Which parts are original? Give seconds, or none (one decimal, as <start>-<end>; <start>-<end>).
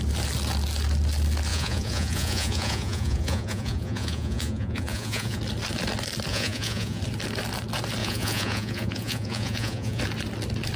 0.0-1.5; 5.4-6.3; 7.0-8.0; 10.0-10.8